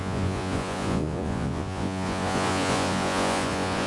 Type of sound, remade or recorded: remade